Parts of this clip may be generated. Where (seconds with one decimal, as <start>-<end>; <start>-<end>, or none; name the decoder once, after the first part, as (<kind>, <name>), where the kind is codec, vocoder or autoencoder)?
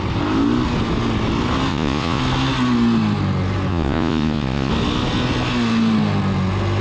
1.7-2.2 (vocoder, Vocos); 3.7-4.7